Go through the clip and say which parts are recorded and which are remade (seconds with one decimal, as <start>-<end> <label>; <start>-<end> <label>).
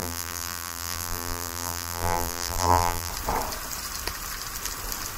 0.0-3.1 remade; 3.1-5.2 recorded